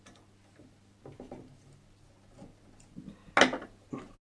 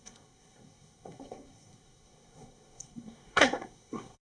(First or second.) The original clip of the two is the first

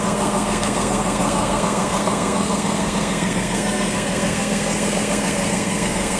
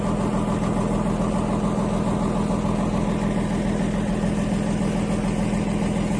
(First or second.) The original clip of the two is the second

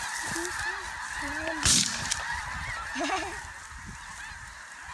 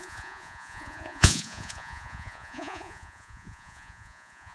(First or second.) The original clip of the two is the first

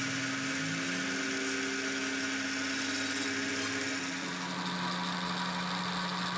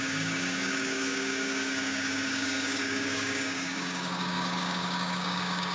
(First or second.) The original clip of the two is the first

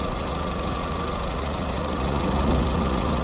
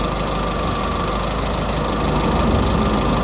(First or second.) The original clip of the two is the second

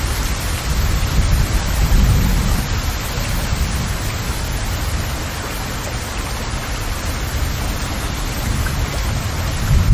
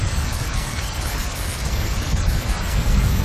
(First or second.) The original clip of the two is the first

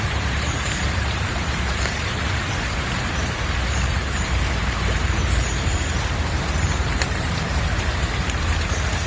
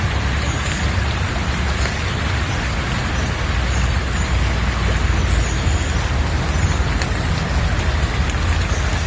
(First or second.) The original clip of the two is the second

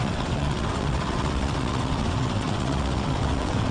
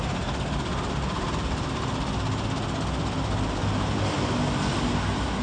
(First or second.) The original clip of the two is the second